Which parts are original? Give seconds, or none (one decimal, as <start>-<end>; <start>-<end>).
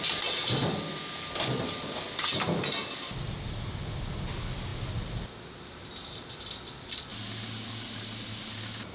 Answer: 0.0-8.9